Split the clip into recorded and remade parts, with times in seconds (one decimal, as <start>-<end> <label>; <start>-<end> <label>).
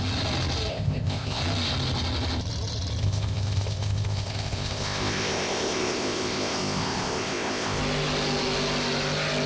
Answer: 0.0-0.7 recorded; 0.7-1.4 remade; 1.4-3.0 recorded; 3.0-7.8 remade; 7.8-9.5 recorded